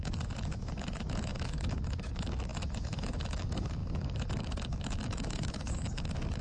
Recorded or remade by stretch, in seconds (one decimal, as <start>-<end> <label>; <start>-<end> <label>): 0.0-6.4 remade